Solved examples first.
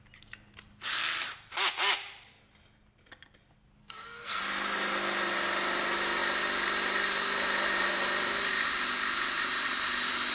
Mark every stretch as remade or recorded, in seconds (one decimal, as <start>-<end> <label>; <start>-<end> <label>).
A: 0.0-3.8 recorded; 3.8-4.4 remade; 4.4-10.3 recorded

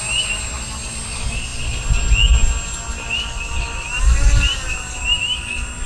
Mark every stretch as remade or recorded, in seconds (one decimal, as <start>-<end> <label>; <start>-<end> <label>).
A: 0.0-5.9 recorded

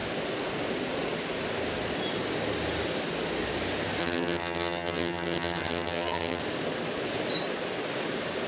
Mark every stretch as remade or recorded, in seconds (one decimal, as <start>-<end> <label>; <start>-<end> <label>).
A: 0.0-4.0 recorded; 4.0-6.4 remade; 6.4-8.5 recorded

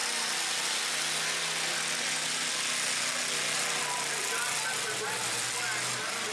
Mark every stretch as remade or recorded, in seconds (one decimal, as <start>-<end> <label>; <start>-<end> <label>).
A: 0.0-6.3 recorded

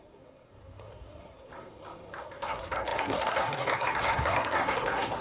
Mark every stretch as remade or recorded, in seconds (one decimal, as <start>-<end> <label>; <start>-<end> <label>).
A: 0.0-1.5 remade; 1.5-2.2 recorded; 2.2-5.2 remade

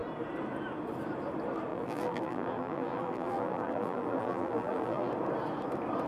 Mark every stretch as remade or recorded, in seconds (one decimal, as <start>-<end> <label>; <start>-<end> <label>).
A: 0.0-1.7 recorded; 1.7-5.1 remade; 5.1-6.1 recorded

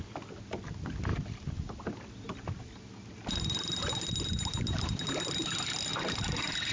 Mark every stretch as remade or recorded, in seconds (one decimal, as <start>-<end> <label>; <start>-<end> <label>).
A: 0.0-6.7 recorded

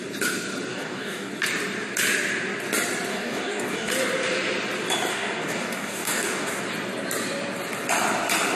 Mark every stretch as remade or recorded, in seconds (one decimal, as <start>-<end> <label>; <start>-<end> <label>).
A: 0.0-0.7 recorded; 0.7-1.3 remade; 1.3-3.1 recorded; 3.1-3.9 remade; 3.9-5.1 recorded; 5.1-6.6 remade; 6.6-8.6 recorded